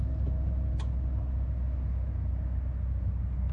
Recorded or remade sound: recorded